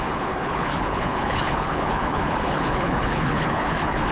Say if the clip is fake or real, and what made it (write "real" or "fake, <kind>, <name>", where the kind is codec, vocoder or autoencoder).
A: fake, codec, HILCodec